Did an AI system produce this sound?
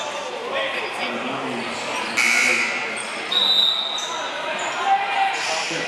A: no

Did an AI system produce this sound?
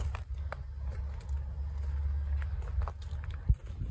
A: no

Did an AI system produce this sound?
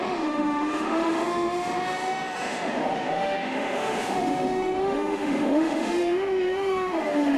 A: yes